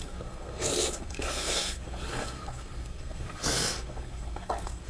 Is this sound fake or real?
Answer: fake